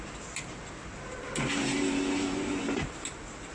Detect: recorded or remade recorded